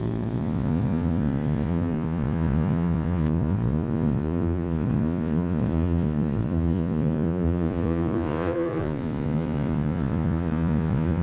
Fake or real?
fake